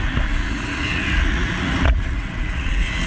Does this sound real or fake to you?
fake